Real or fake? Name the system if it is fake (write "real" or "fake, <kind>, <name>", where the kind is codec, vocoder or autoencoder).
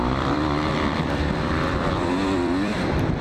fake, vocoder, BigVGAN v2